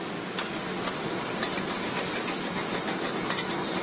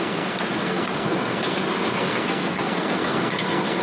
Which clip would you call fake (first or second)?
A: second